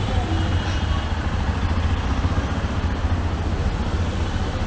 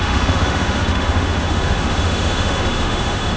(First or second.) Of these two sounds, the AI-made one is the second